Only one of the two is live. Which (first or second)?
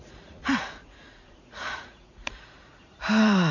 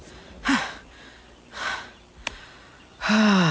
second